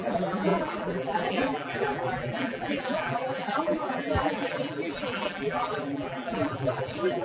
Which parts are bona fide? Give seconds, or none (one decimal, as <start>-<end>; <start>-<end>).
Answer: none